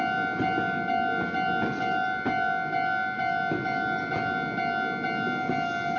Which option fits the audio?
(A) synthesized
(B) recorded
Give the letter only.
B